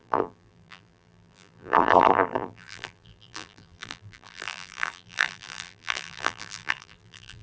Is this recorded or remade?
remade